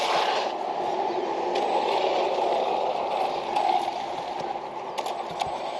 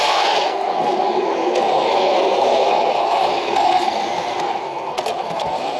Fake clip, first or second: second